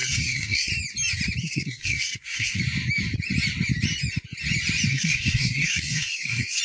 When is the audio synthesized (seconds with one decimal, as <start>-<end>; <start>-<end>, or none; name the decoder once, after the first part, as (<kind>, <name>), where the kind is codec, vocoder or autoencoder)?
0.0-0.7 (codec, SNAC); 1.4-2.6; 4.9-6.6